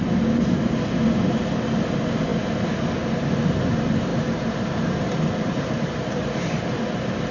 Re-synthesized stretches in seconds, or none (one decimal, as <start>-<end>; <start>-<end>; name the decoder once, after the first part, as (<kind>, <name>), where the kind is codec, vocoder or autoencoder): 4.1-6.8 (vocoder, BigVGAN v2)